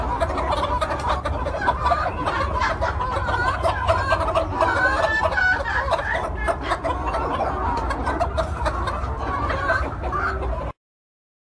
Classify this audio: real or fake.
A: real